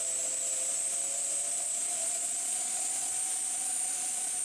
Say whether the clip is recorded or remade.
recorded